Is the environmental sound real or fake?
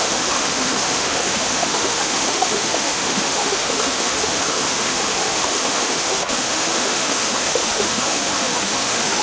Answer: fake